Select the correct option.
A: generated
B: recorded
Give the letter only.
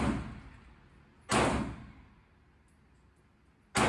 B